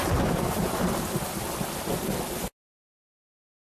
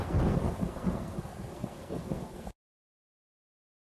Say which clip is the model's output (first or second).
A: second